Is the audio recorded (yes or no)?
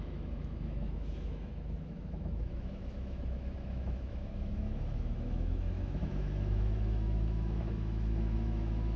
no